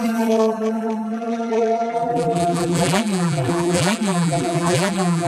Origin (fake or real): fake